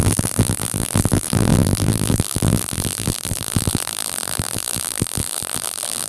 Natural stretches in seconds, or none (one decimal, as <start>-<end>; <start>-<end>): none